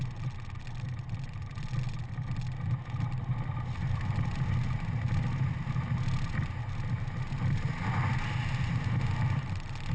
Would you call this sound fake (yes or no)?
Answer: no